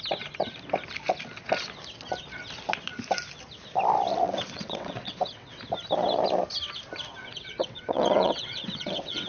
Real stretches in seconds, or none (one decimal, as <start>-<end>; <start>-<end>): 0.0-4.1; 5.6-7.2